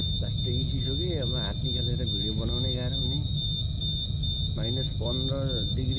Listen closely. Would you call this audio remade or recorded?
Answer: recorded